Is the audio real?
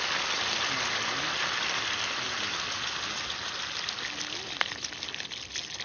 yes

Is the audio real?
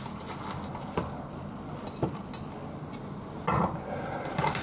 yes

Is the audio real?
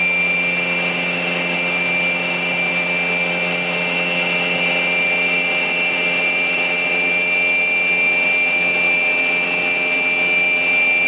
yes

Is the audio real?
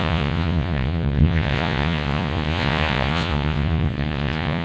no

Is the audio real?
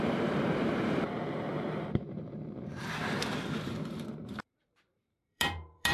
no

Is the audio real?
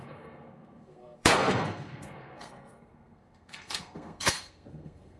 no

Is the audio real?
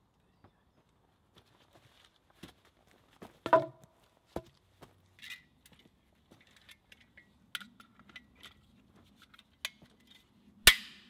yes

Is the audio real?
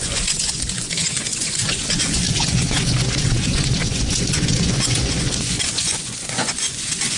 no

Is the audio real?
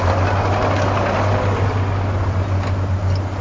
yes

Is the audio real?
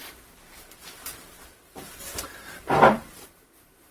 no